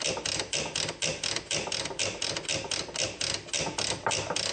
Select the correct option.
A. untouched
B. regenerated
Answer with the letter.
A